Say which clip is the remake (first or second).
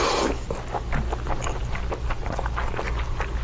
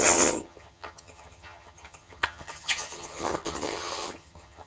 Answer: second